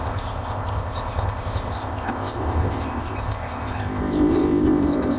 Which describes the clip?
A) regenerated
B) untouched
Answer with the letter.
A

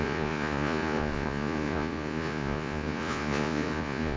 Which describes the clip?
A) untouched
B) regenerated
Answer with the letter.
B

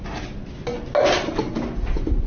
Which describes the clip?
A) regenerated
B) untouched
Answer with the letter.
B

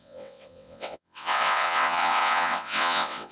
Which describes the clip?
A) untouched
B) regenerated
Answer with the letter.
B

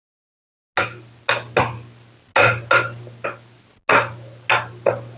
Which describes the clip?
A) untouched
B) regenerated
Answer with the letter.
A